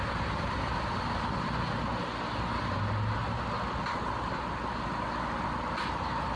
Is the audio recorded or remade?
recorded